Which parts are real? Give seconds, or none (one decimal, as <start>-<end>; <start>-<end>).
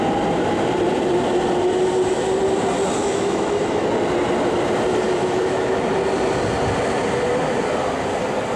0.0-3.0; 3.9-5.2; 5.8-8.6